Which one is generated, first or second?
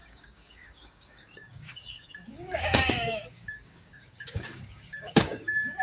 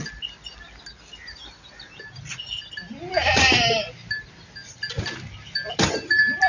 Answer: first